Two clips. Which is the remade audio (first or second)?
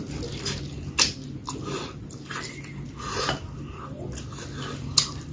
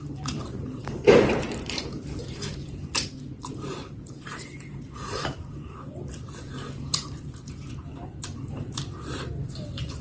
second